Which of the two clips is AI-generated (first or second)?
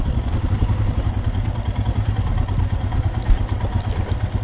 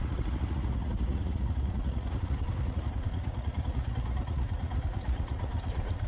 second